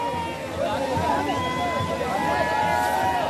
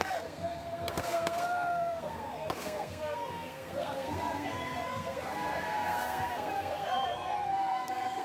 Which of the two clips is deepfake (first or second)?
second